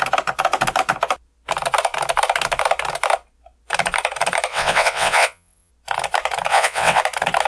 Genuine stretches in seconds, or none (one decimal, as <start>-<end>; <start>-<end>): 0.0-4.5; 5.7-6.5; 7.0-7.5